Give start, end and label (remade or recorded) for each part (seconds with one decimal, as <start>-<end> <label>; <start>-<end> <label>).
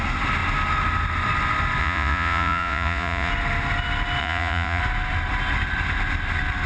0.0-1.8 recorded; 1.8-3.3 remade; 3.3-4.2 recorded; 4.2-4.8 remade; 4.8-6.7 recorded